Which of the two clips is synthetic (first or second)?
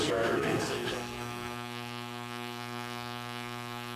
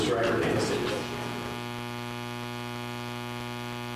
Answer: first